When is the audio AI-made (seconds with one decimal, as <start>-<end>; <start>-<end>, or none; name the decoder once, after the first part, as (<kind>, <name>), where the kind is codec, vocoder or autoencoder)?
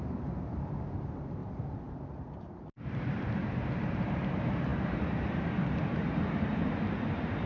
0.0-1.4 (vocoder, BigVGAN v2); 2.2-7.5